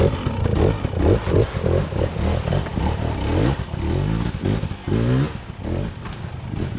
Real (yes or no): yes